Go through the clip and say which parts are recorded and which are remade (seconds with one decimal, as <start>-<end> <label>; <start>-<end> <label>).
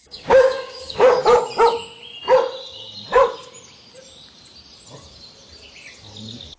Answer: 0.0-1.2 remade; 1.2-6.6 recorded